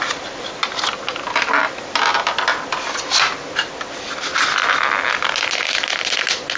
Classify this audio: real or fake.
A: real